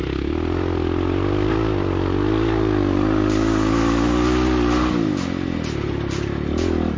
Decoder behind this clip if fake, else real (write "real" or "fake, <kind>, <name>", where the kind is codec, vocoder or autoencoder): real